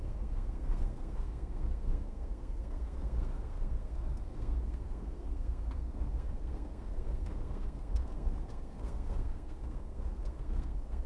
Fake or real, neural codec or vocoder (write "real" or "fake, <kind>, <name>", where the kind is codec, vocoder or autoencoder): fake, codec, SNAC